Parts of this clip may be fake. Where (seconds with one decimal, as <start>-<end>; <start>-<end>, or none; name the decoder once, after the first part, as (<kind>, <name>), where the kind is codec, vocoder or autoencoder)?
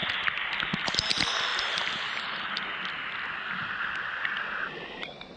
none